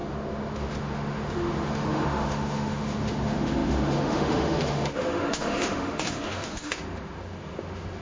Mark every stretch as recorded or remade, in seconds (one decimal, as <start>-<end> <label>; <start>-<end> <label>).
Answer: 0.0-8.0 remade